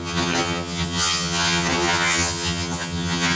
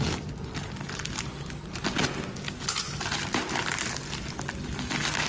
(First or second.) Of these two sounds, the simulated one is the first